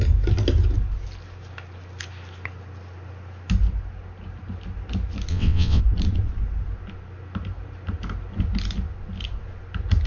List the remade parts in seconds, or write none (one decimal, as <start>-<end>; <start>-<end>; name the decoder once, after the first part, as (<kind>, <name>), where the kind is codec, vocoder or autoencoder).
5.3-5.8 (vocoder, WaveNeXt)